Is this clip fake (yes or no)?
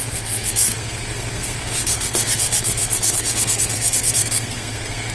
yes